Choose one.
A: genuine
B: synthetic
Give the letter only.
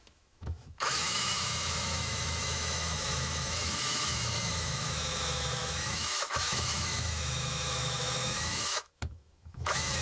B